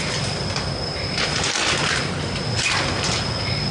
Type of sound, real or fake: real